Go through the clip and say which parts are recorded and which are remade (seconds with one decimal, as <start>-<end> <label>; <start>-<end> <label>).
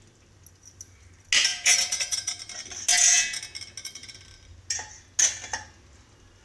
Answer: 0.0-1.5 recorded; 1.5-2.4 remade; 2.4-2.9 recorded; 2.9-3.4 remade; 3.4-6.4 recorded